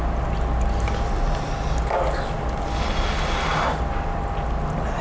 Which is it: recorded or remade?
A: recorded